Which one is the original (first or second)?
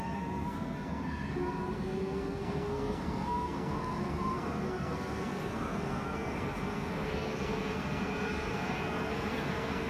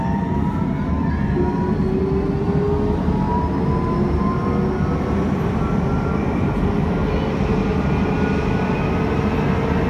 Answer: second